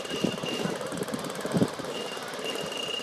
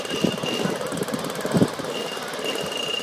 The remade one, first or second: first